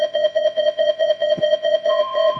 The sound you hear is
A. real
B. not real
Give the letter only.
B